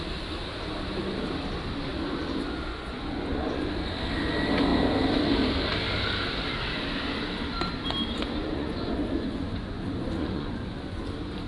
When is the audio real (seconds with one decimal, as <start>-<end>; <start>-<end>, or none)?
0.0-2.7; 3.7-8.4; 11.0-11.5